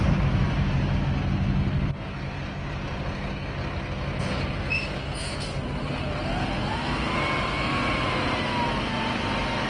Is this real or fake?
real